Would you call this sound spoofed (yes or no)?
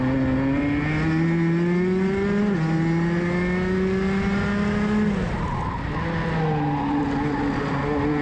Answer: no